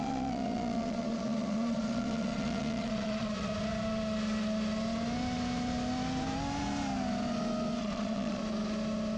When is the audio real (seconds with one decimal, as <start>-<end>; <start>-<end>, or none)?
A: 3.5-7.8; 8.4-9.2